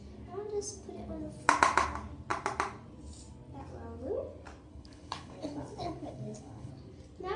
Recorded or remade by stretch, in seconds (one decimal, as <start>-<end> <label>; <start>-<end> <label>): 0.0-4.7 recorded; 4.7-6.7 remade; 6.7-7.4 recorded